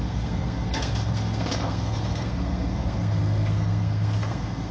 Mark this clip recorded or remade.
remade